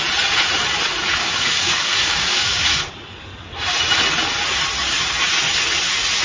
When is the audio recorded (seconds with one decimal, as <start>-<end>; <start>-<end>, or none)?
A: 0.0-1.2; 2.9-6.2